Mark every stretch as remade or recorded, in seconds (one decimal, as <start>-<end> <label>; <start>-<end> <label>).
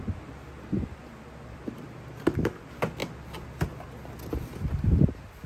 0.0-5.5 recorded